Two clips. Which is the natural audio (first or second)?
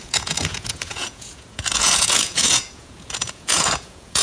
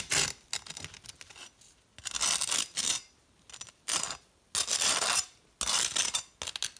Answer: second